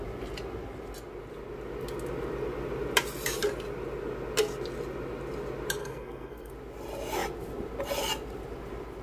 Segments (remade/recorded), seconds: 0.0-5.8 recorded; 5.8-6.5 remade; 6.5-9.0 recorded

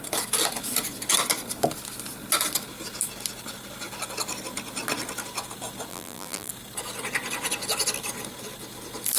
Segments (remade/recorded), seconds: 0.0-5.9 recorded; 5.9-6.5 remade; 6.5-9.2 recorded

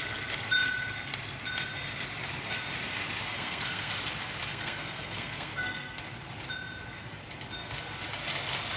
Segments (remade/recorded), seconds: 0.0-3.3 recorded; 3.3-3.9 remade; 3.9-4.5 recorded; 4.5-6.0 remade; 6.0-8.8 recorded

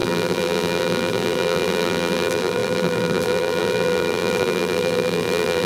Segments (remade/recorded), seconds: 0.0-5.7 remade

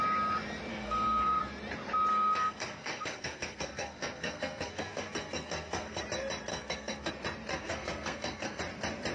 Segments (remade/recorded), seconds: 0.0-0.7 recorded; 0.7-1.4 remade; 1.4-2.1 recorded; 2.1-6.0 remade; 6.0-6.5 recorded; 6.5-7.1 remade; 7.1-7.5 recorded; 7.5-8.6 remade; 8.6-9.1 recorded

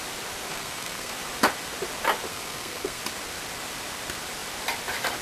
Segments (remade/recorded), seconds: 0.0-0.5 recorded; 0.5-1.1 remade; 1.1-2.3 recorded; 2.3-3.0 remade; 3.0-5.2 recorded

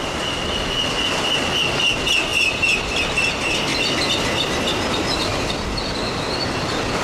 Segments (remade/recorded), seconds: 0.0-7.0 recorded